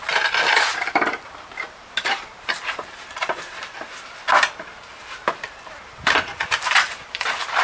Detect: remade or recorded remade